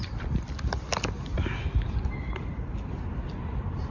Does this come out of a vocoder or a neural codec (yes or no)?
no